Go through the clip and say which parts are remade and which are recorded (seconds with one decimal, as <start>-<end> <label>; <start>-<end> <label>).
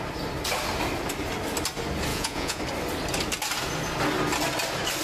0.0-2.1 recorded; 2.1-2.6 remade; 2.6-5.0 recorded